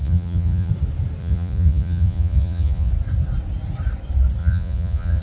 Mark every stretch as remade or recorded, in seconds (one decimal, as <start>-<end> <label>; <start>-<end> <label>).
0.0-0.7 remade; 0.7-1.2 recorded; 1.2-2.9 remade; 2.9-4.4 recorded; 4.4-5.2 remade